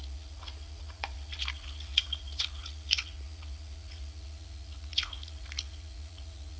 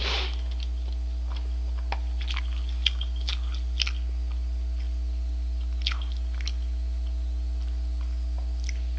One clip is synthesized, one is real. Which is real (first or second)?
second